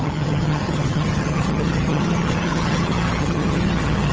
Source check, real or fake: fake